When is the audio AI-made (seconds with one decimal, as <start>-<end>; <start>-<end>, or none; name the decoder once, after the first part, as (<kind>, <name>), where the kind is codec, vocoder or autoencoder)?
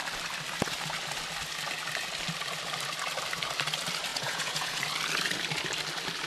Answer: 4.1-4.8 (vocoder, Vocos)